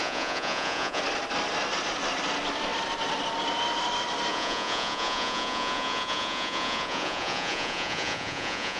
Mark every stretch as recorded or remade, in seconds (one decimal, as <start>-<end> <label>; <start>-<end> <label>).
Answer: 0.0-1.0 remade; 1.0-4.3 recorded; 4.3-8.8 remade